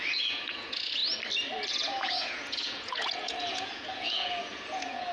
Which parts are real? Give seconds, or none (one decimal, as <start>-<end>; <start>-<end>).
1.0-1.7